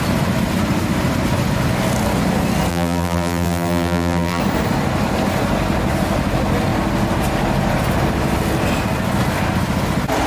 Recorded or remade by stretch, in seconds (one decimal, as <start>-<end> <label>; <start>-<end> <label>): 0.0-2.7 recorded; 2.7-4.4 remade; 4.4-10.3 recorded

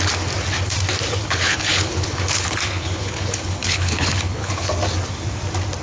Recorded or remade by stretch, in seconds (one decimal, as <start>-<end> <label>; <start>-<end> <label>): 0.0-1.2 recorded; 1.2-4.7 remade; 4.7-5.8 recorded

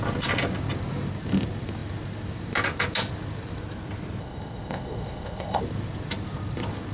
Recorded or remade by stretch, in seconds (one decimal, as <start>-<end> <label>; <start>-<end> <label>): 0.0-4.2 recorded; 4.2-5.6 remade; 5.6-6.9 recorded